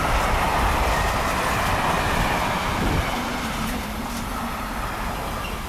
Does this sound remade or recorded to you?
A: recorded